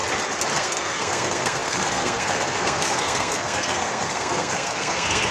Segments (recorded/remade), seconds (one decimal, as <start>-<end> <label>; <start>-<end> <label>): 0.0-0.5 recorded; 0.5-5.3 remade